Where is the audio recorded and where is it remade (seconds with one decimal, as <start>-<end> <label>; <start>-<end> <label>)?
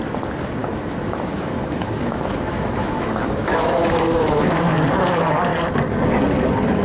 0.0-0.6 recorded; 0.6-4.7 remade; 4.7-6.8 recorded